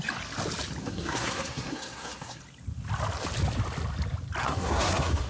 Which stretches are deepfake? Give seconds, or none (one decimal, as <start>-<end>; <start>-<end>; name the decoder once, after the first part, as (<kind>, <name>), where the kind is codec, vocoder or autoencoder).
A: 0.8-2.4 (codec, SNAC); 4.4-5.3

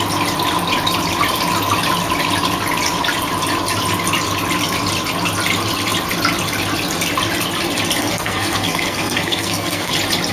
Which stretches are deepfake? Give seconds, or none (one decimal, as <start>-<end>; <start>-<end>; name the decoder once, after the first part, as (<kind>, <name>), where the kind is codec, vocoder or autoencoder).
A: 8.0-9.9 (codec, SNAC)

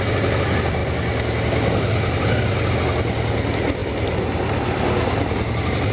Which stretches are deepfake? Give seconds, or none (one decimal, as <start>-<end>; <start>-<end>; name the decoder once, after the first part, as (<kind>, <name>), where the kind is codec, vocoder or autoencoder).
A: none

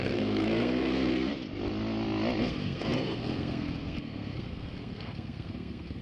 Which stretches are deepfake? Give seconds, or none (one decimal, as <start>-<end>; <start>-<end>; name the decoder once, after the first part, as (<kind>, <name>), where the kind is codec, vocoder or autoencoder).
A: 0.0-1.3 (codec, SNAC); 2.4-6.0

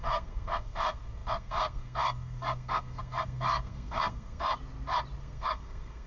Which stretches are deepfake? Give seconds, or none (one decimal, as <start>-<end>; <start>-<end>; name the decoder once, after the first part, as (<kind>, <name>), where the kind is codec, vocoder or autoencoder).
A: 0.0-4.5 (codec, SNAC); 5.2-6.1